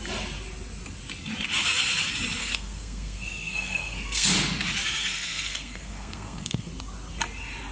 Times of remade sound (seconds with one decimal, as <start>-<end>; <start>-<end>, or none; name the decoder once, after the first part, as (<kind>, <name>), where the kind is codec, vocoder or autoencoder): 2.4-4.3 (codec, SNAC); 5.0-6.7